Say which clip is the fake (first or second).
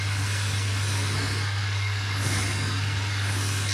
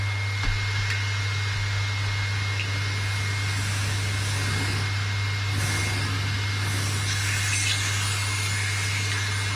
first